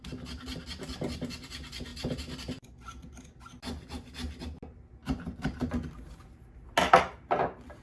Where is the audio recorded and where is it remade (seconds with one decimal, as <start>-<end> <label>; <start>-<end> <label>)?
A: 0.0-5.0 recorded; 5.0-5.7 remade; 5.7-7.8 recorded